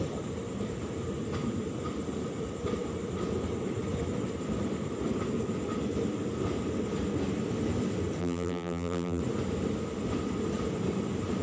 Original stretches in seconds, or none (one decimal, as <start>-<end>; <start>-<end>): 0.0-8.2; 9.2-11.4